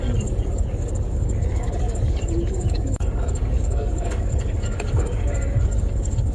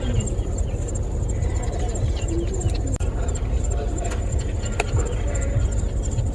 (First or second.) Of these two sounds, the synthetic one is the first